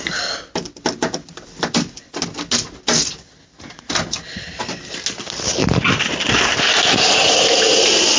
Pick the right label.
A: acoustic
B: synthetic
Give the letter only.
A